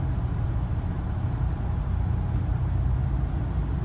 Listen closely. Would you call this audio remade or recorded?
recorded